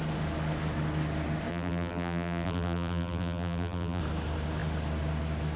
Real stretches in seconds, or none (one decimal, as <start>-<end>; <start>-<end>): 0.0-1.5; 4.0-5.6